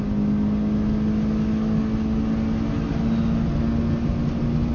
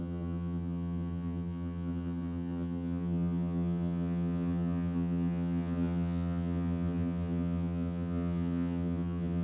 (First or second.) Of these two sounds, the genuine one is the first